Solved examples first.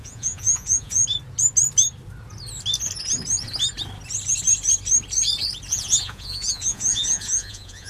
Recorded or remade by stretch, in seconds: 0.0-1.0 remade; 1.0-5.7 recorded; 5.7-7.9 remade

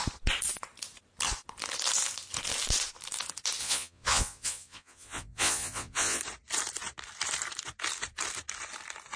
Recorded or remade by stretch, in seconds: 0.0-3.6 recorded; 3.6-6.2 remade; 6.2-9.2 recorded

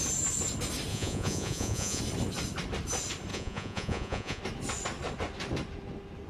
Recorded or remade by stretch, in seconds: 0.0-0.9 recorded; 0.9-2.0 remade; 2.0-3.3 recorded; 3.3-4.4 remade; 4.4-6.3 recorded